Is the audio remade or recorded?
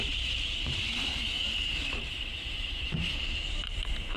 remade